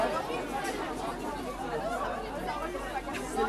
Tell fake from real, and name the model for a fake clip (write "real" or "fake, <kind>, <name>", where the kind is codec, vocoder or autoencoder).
real